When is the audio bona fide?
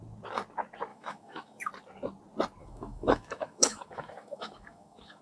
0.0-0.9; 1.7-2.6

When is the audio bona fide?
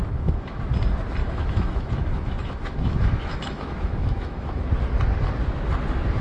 0.6-1.2; 4.6-6.2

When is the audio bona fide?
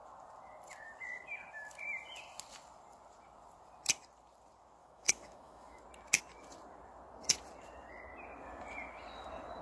0.0-4.8; 5.8-9.6